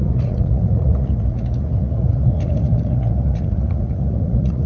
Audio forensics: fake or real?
fake